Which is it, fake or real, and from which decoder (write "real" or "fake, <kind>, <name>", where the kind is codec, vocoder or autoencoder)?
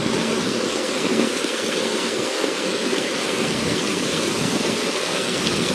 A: fake, codec, SNAC